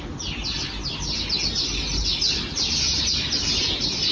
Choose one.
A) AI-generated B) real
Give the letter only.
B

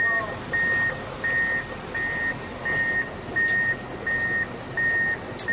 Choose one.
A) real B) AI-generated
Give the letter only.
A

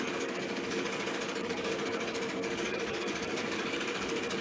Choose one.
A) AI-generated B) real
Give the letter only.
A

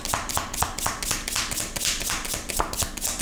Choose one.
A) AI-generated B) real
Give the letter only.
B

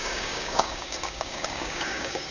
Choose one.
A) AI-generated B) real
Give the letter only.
A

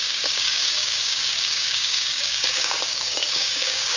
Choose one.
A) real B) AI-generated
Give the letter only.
B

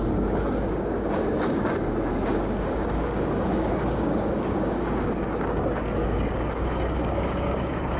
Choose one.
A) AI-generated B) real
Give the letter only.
A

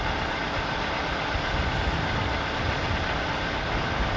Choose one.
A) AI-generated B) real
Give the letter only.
B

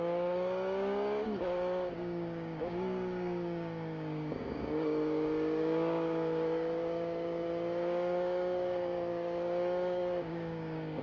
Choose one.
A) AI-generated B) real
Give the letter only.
A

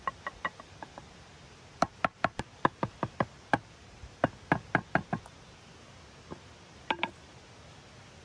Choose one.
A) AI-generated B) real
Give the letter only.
B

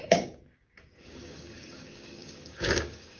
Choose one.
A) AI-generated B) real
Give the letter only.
A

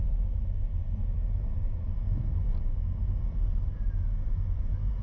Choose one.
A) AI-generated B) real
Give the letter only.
B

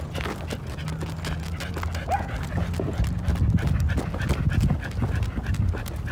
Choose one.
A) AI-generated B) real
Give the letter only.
B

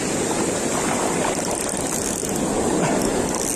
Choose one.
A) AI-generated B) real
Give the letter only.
B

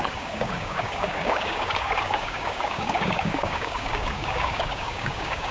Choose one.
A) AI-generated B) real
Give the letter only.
A